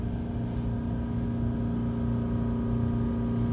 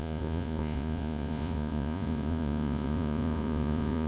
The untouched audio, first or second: first